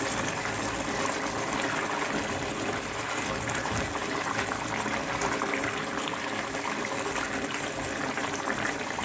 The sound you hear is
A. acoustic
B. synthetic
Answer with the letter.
A